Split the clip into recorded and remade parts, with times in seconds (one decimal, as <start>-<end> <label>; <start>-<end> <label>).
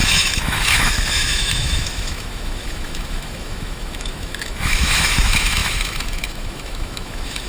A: 0.0-7.5 remade